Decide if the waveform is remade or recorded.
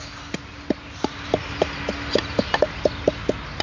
recorded